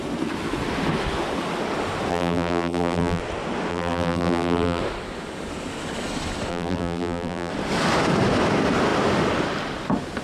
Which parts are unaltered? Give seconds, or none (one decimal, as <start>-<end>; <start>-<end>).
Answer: 0.0-2.1; 3.2-3.7; 4.8-6.5; 7.5-10.2